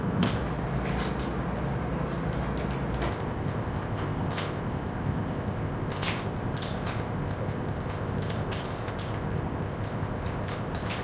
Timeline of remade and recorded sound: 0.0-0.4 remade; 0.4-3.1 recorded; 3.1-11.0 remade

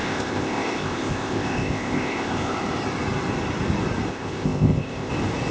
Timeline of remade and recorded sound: 0.0-2.6 remade; 2.6-4.1 recorded; 4.1-5.1 remade; 5.1-5.5 recorded